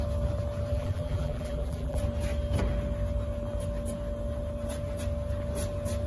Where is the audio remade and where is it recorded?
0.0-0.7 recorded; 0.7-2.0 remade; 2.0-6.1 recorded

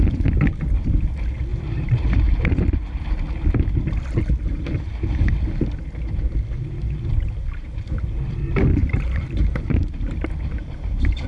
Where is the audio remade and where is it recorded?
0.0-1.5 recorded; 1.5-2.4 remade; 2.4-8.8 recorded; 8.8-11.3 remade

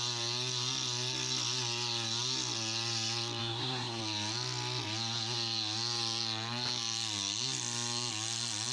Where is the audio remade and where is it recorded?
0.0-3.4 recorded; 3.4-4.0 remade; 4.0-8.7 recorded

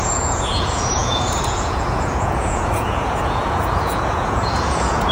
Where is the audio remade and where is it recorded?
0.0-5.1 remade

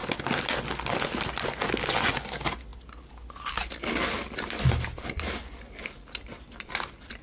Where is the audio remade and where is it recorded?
0.0-7.2 recorded

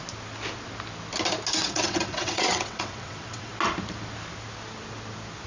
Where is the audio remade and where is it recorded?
0.0-1.6 recorded; 1.6-3.5 remade; 3.5-5.5 recorded